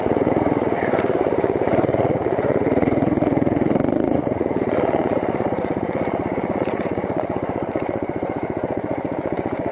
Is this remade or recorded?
remade